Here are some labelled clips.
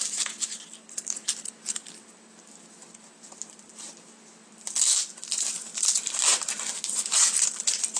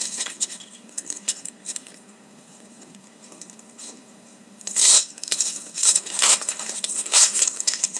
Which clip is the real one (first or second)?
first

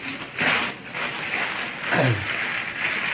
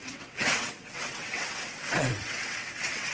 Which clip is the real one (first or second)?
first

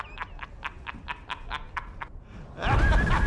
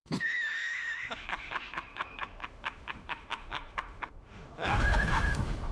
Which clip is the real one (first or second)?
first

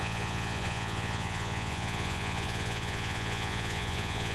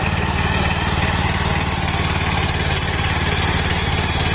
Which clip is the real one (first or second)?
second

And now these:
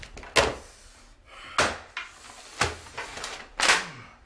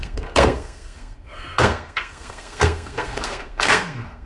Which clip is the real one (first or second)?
first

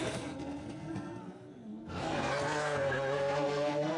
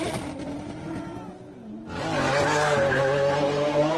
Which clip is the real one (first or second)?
second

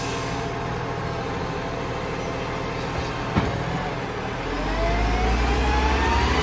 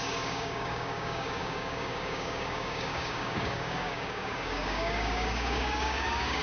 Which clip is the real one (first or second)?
first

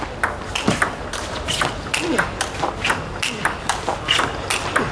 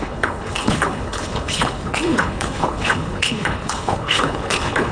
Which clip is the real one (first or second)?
first